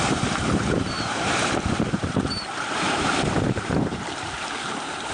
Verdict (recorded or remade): remade